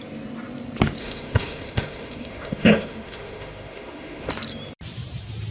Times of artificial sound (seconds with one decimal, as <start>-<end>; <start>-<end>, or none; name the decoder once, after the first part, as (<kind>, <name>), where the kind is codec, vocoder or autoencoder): 1.0-4.3 (autoencoder, DAC-VAE)